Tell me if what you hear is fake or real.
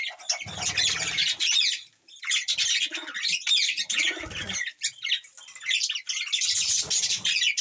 real